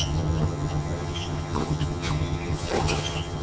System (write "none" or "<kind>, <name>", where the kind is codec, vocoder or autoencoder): vocoder, HiFi-GAN